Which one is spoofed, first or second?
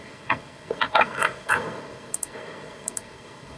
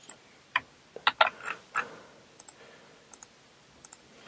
first